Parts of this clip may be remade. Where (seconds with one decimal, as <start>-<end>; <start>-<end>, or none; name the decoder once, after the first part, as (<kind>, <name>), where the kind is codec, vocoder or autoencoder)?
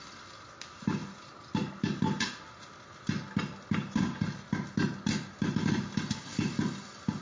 none